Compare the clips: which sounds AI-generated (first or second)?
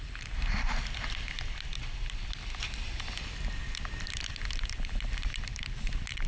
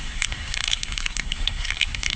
second